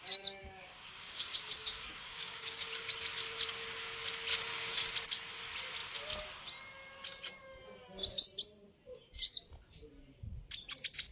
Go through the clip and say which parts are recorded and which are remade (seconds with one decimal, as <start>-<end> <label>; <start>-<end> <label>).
0.0-0.4 recorded; 0.4-2.7 remade; 2.7-4.3 recorded; 4.3-4.9 remade; 4.9-11.1 recorded